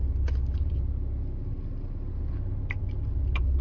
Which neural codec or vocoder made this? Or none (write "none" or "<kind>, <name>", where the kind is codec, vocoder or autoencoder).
none